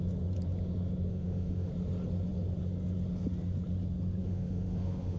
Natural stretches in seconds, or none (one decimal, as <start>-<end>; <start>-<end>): 0.0-1.1; 1.7-4.2